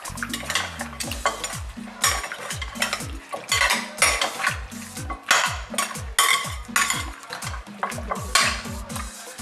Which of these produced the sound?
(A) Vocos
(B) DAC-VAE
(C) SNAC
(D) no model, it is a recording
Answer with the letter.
D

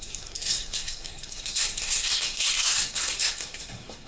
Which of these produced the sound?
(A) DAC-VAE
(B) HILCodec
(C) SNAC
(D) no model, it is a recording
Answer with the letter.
C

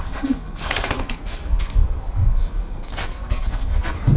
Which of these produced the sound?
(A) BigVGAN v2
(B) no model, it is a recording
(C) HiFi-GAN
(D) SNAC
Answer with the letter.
D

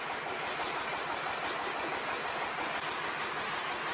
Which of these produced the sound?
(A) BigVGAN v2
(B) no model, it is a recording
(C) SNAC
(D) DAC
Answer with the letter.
B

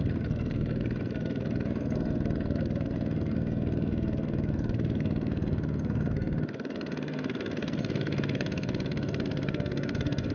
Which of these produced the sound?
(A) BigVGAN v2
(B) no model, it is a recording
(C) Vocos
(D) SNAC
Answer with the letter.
D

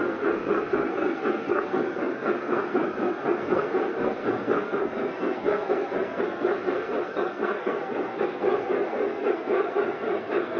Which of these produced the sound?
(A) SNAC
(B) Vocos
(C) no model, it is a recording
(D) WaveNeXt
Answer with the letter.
A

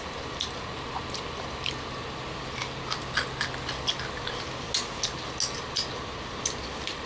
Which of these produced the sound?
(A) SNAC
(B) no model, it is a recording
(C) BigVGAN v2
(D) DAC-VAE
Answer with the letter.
B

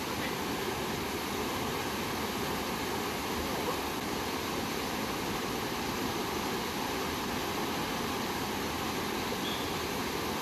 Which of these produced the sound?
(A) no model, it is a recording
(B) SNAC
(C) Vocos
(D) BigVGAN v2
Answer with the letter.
A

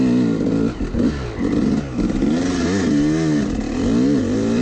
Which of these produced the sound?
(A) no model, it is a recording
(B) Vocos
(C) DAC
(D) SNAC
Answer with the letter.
A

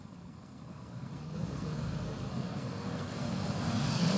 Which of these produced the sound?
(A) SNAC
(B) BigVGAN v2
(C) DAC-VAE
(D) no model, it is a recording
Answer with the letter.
A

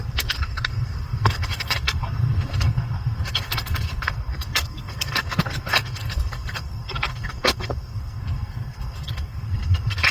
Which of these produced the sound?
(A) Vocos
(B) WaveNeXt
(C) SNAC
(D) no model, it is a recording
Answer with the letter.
C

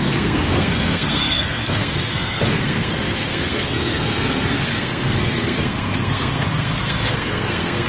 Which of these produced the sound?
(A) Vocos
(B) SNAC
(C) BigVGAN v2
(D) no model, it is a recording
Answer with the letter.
B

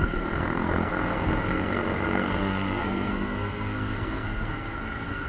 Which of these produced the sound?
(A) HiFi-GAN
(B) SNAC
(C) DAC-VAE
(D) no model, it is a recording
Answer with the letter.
B